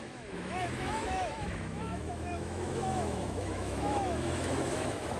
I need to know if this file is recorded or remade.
remade